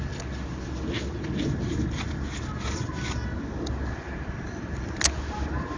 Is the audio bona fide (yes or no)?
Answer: yes